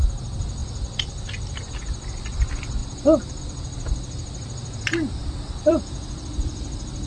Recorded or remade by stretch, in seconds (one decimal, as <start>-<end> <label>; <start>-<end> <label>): 0.0-0.6 recorded; 0.6-1.6 remade; 1.6-5.2 recorded; 5.2-7.1 remade